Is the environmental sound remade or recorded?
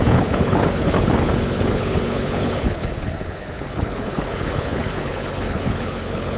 remade